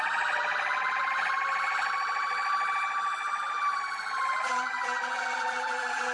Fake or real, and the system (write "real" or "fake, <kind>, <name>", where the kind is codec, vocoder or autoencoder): fake, vocoder, Vocos